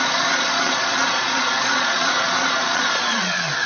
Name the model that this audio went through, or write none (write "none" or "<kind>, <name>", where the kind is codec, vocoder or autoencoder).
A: vocoder, Vocos